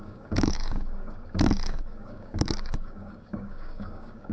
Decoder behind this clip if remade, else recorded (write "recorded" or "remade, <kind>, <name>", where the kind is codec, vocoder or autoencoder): remade, codec, DAC